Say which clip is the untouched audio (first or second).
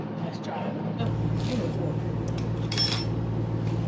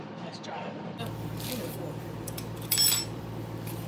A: first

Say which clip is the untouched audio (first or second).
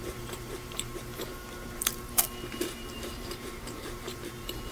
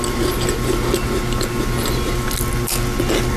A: second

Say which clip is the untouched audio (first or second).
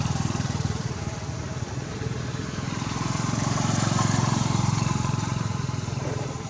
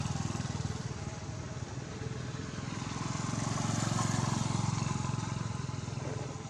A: second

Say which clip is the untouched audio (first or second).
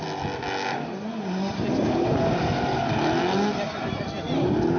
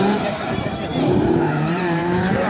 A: first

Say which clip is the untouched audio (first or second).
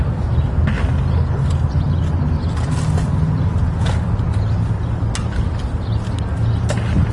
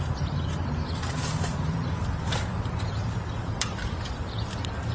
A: first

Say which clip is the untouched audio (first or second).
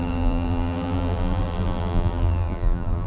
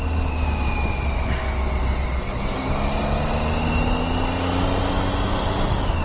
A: second